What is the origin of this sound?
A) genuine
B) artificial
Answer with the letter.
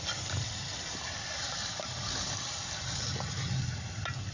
A